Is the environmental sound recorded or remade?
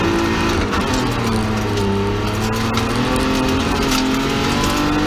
recorded